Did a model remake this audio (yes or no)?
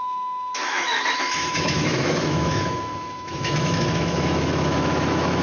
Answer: yes